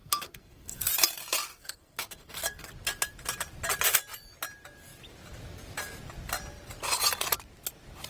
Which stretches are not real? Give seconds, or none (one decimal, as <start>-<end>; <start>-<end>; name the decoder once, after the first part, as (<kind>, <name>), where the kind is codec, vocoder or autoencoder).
0.0-0.9 (codec, SNAC); 1.5-2.7